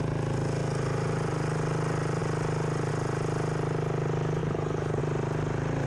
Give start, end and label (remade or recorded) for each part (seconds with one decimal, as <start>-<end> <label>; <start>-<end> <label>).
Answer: 0.0-4.4 recorded; 4.4-5.0 remade; 5.0-5.9 recorded